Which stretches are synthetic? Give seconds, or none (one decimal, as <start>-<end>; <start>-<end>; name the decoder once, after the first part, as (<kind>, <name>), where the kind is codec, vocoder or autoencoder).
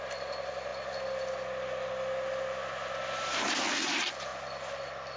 none